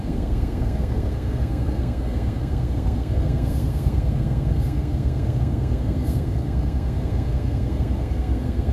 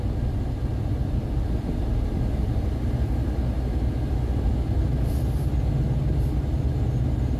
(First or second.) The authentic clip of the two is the second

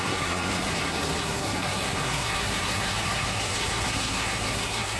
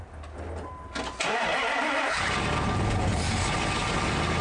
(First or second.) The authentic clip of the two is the second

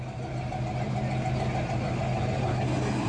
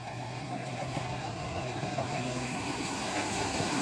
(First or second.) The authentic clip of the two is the first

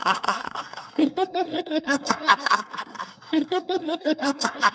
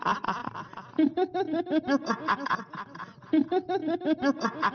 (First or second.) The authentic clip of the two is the second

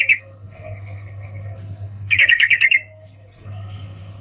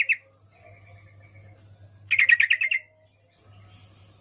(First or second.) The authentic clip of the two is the second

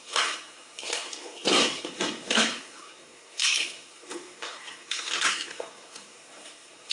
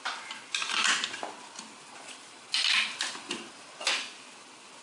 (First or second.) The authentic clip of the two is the second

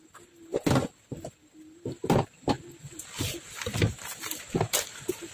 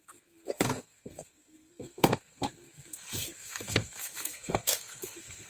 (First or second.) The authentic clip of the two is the first